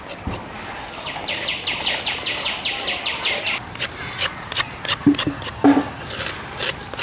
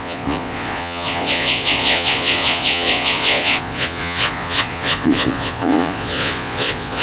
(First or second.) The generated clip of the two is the second